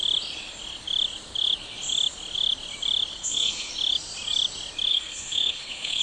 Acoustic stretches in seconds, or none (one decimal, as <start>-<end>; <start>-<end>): 0.0-3.1; 3.7-4.9

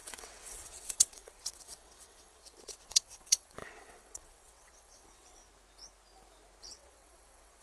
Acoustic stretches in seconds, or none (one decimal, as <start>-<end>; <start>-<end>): 5.4-6.6

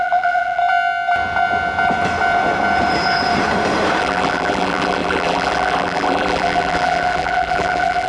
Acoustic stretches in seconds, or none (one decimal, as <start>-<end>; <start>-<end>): 0.6-4.0

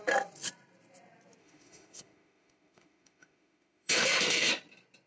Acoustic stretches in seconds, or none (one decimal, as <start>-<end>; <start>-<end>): 0.0-1.4; 4.5-5.1